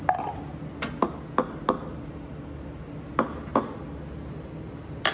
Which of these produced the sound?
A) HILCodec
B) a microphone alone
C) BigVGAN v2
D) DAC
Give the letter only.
B